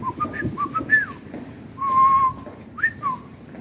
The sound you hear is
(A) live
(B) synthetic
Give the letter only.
A